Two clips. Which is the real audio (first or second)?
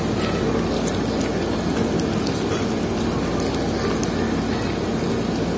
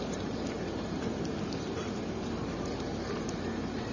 first